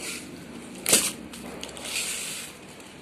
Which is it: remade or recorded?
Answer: recorded